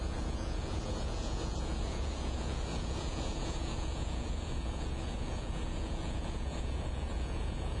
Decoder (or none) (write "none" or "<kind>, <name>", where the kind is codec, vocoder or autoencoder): vocoder, Vocos